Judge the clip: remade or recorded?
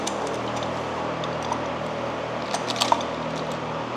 recorded